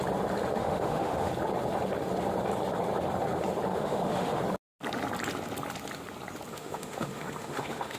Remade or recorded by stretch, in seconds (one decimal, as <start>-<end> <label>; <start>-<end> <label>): 0.0-0.6 recorded; 0.6-1.3 remade; 1.3-3.7 recorded; 3.7-4.4 remade; 4.4-6.5 recorded; 6.5-8.0 remade